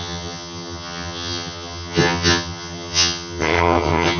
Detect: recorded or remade remade